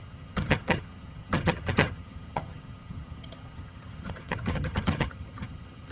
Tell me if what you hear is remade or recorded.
remade